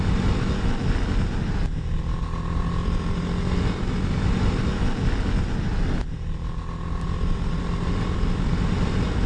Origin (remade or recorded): recorded